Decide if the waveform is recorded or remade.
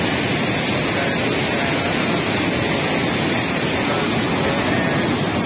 recorded